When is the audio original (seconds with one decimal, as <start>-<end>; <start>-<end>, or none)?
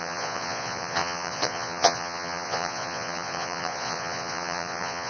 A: none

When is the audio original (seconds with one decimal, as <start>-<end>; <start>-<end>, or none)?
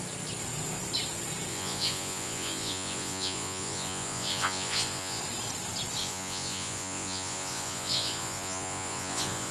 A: 0.0-1.5; 5.2-6.0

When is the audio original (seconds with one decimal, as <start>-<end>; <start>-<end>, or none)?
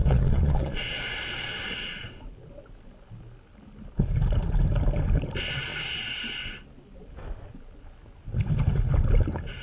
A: 2.2-9.6